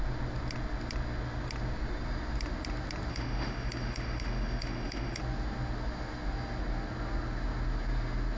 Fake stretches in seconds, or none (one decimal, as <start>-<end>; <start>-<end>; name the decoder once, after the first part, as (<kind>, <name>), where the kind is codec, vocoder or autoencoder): 3.1-5.2 (autoencoder, DAC-VAE)